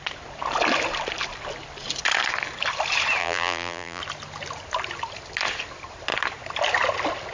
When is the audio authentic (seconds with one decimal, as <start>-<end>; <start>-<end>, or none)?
0.0-3.2; 4.0-7.3